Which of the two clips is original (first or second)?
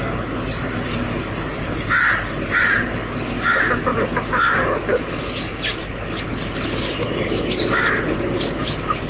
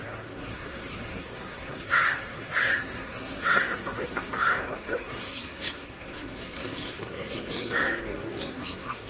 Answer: first